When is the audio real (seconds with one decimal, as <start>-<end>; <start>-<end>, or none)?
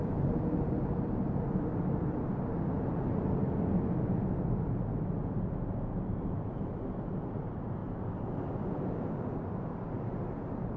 0.0-7.8; 8.5-10.8